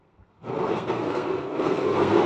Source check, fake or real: fake